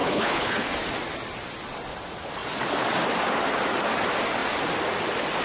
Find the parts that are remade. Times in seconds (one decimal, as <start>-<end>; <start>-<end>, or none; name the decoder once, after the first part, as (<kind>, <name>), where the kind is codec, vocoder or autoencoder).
0.0-0.7 (codec, HILCodec)